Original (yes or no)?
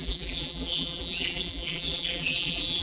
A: no